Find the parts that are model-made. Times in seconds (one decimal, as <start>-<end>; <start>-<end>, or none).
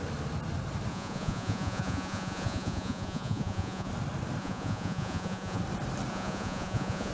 0.9-3.9; 4.4-5.6; 6.1-7.1